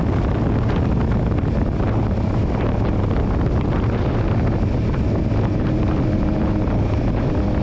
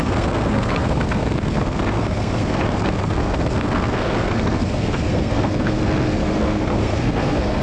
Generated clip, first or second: second